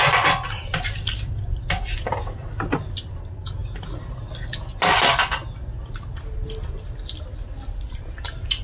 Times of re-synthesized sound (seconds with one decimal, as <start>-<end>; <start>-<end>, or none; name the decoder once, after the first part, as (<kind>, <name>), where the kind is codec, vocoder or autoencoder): none